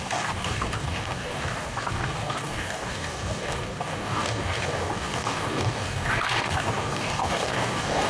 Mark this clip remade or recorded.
remade